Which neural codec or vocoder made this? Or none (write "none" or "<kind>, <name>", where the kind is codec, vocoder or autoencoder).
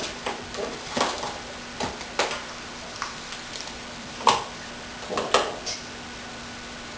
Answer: none